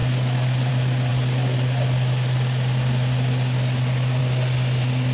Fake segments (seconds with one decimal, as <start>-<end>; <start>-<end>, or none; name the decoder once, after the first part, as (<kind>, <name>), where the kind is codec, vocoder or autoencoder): none